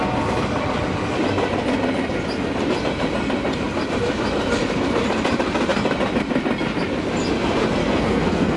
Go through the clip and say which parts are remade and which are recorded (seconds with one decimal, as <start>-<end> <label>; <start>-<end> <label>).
0.0-7.8 recorded; 7.8-8.6 remade